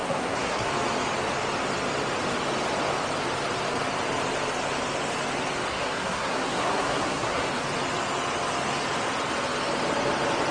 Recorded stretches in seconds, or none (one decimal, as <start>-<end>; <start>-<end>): 0.7-5.7; 7.5-10.5